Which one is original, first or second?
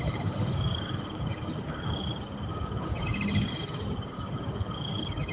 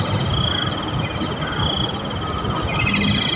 second